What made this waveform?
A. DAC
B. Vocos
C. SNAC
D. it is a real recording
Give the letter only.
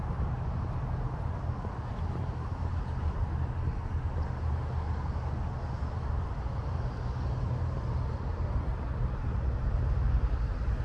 D